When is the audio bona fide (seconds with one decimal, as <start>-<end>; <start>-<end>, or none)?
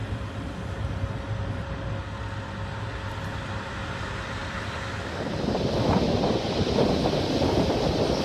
0.0-8.2